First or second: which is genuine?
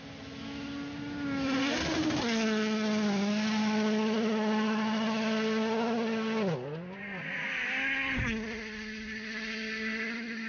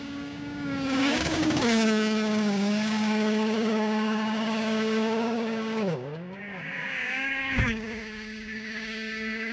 first